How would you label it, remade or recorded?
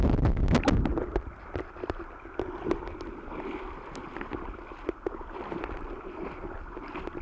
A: recorded